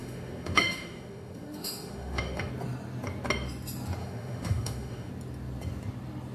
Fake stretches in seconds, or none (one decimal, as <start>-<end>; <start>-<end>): 0.0-2.5; 4.0-5.1

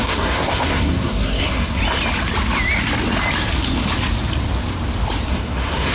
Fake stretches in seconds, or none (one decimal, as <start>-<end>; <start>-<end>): 0.0-1.8; 5.3-5.9

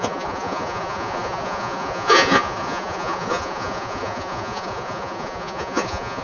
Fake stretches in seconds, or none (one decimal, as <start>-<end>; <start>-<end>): 0.0-6.2

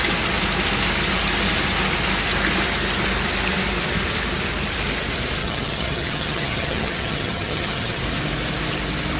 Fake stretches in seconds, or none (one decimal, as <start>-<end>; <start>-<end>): 5.4-8.0